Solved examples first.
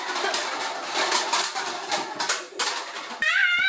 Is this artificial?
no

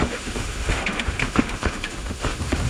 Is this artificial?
yes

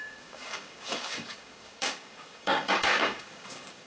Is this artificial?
yes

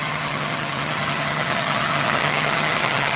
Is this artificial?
yes